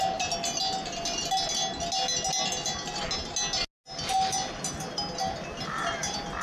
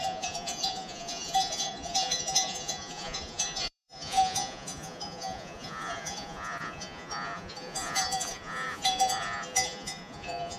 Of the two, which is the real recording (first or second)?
first